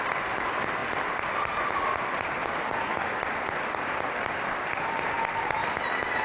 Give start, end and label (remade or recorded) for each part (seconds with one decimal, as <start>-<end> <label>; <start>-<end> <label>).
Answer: 0.0-6.2 recorded